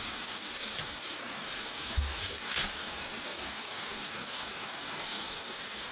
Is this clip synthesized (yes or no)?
yes